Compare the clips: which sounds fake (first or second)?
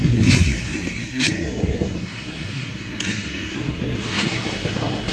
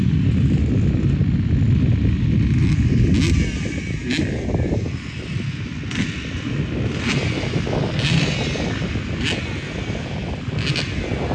first